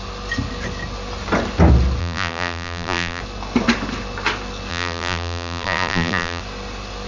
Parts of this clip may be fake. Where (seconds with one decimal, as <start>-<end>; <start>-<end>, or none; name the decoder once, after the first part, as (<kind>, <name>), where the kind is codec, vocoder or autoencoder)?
2.0-3.2 (vocoder, BigVGAN v2); 4.7-6.4